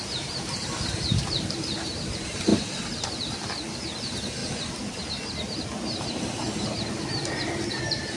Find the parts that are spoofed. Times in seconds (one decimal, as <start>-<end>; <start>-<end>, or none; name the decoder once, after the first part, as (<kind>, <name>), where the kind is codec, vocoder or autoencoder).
0.0-2.5 (vocoder, BigVGAN v2); 3.3-4.4; 7.7-8.2